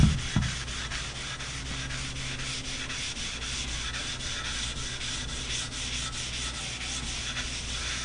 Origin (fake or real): real